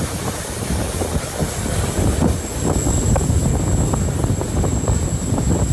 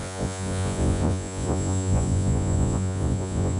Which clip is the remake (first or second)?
second